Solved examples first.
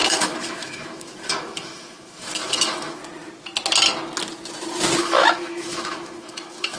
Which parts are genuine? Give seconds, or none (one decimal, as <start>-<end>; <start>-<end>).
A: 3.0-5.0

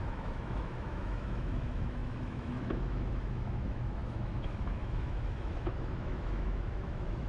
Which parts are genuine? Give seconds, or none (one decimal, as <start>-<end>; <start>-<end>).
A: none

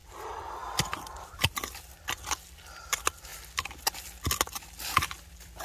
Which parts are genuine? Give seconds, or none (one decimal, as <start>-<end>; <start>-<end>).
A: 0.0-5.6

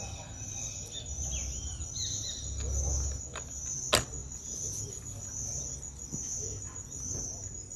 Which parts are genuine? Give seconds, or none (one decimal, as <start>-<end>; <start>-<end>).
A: 0.0-7.8

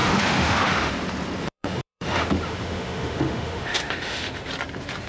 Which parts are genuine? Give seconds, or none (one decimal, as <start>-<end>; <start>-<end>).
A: 0.9-1.4; 4.5-5.1

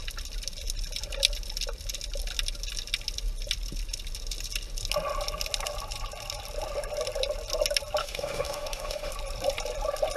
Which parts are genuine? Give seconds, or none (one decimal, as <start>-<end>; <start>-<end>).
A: 0.0-8.0; 9.1-10.2